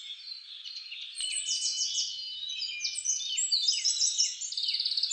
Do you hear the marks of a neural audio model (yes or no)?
no